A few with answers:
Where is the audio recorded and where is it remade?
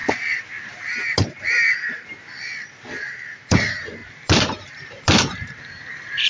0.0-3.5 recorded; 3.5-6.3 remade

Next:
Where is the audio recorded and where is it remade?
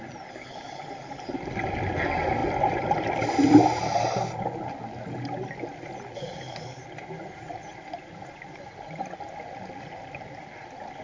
0.0-11.0 recorded